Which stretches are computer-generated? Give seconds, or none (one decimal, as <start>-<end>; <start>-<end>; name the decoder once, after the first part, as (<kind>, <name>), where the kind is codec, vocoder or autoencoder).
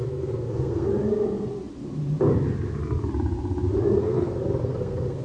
0.0-0.9 (codec, SNAC); 4.0-5.2